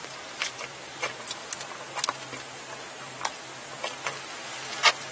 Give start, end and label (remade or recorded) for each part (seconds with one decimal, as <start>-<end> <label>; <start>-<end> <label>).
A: 0.0-1.4 remade; 1.4-4.5 recorded; 4.5-5.1 remade